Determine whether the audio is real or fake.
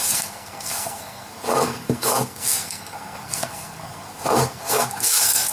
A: fake